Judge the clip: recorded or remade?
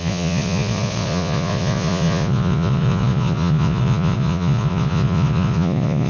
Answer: remade